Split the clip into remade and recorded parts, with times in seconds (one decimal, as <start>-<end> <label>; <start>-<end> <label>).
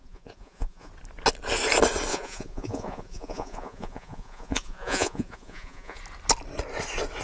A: 0.0-0.9 remade; 0.9-2.1 recorded; 2.1-6.0 remade; 6.0-7.2 recorded